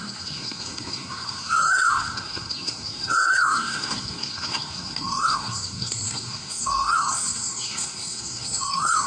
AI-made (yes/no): yes